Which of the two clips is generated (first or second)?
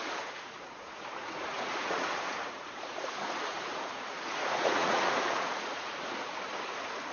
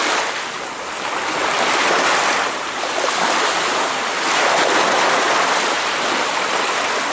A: first